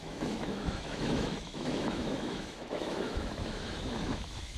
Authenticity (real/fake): fake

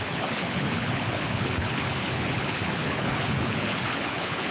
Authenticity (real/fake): fake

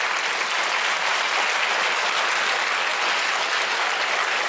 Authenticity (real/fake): real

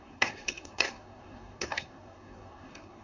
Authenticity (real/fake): fake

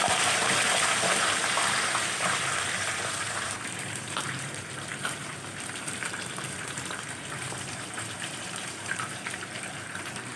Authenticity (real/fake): fake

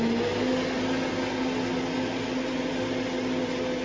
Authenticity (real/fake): real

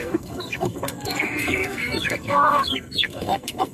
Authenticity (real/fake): fake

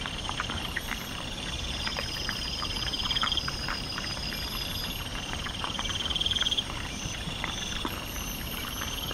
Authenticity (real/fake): fake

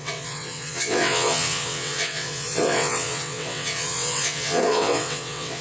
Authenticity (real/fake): fake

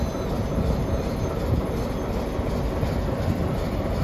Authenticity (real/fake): real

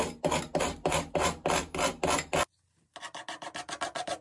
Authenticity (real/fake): real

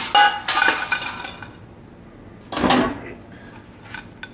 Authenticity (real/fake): real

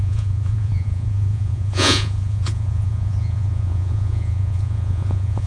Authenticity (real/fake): fake